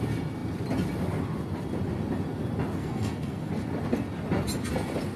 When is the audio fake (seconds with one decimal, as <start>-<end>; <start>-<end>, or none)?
2.8-3.5